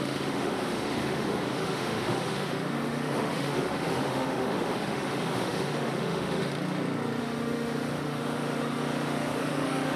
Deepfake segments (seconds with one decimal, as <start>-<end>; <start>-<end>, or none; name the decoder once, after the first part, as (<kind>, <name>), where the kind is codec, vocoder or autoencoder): 0.0-6.5 (autoencoder, DAC-VAE); 7.2-10.0